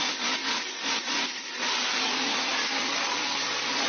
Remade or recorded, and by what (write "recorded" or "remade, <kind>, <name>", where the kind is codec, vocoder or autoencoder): recorded